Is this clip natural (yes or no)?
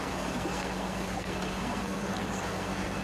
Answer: no